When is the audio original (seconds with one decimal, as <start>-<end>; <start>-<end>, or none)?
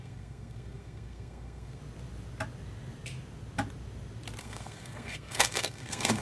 1.8-4.4